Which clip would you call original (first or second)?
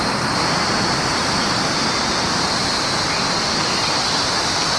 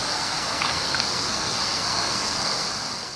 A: first